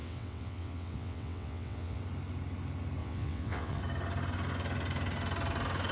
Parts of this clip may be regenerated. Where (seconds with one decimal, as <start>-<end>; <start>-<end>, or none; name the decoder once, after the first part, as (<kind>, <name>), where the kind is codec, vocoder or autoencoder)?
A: 0.0-2.0 (vocoder, WaveNeXt); 3.0-3.8